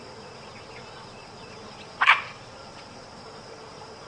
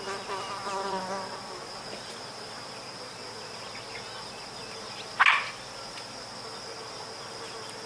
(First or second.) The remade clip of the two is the first